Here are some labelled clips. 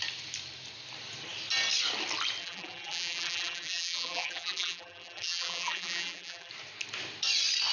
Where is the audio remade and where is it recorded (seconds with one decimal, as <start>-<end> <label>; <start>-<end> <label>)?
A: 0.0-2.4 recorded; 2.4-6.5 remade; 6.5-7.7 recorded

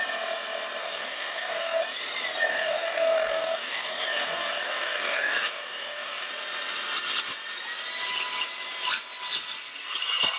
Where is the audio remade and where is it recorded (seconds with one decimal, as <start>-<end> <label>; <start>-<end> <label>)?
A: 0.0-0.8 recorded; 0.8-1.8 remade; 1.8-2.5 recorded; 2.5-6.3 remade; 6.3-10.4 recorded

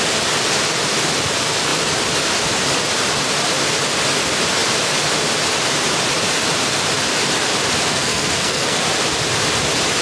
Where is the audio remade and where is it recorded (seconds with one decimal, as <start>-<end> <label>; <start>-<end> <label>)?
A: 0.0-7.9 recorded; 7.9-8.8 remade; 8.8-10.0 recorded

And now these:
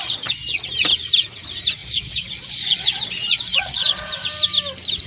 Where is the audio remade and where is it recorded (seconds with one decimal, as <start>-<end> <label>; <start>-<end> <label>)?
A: 0.0-0.7 remade; 0.7-1.8 recorded; 1.8-4.1 remade; 4.1-5.1 recorded

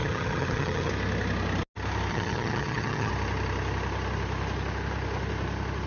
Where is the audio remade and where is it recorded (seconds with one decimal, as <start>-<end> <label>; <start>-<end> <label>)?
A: 0.0-0.9 remade; 0.9-2.1 recorded; 2.1-3.1 remade; 3.1-5.9 recorded